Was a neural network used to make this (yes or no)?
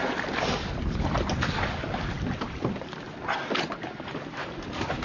no